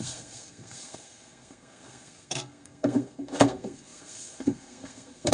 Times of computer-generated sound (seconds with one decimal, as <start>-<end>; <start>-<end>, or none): 0.0-5.3